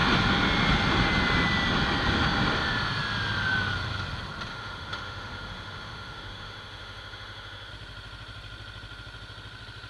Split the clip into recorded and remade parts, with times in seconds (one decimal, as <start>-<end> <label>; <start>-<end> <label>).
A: 0.0-4.5 recorded; 4.5-7.7 remade; 7.7-9.9 recorded